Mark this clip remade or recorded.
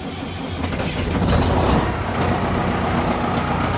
recorded